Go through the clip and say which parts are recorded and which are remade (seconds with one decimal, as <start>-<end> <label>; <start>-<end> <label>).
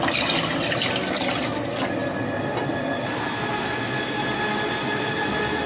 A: 0.0-5.7 recorded